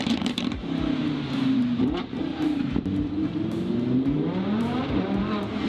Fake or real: fake